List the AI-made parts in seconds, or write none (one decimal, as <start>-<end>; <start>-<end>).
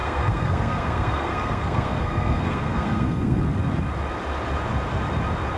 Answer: 0.0-3.4